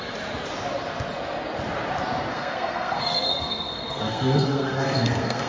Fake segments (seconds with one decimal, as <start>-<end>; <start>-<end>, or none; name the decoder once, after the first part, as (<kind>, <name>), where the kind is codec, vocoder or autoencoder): 2.3-5.5 (codec, SNAC)